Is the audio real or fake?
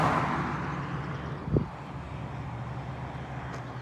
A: real